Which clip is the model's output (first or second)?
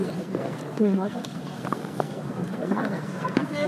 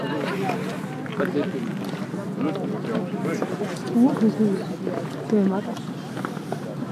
first